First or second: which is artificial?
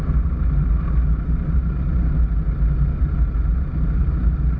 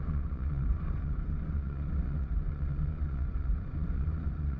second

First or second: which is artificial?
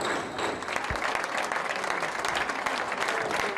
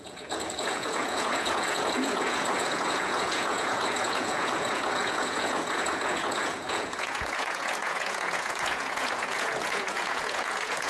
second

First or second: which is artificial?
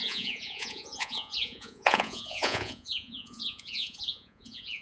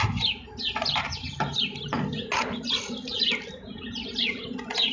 first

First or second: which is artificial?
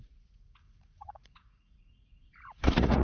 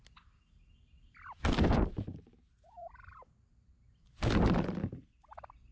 first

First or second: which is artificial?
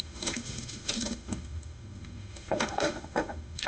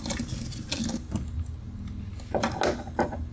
first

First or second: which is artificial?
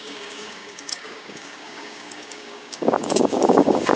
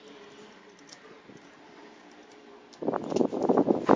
first